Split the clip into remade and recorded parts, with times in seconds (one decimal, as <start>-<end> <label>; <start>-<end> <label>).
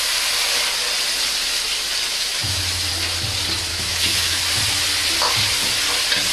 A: 0.0-2.1 recorded; 2.1-2.9 remade; 2.9-3.7 recorded; 3.7-4.4 remade; 4.4-6.3 recorded